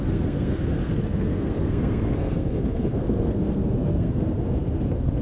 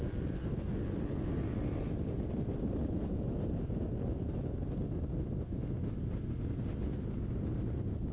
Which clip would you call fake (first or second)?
first